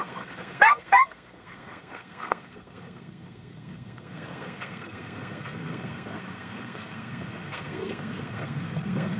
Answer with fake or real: fake